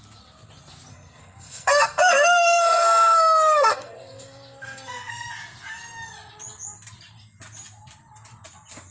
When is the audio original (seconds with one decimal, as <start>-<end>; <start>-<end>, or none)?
0.0-0.9; 5.3-8.9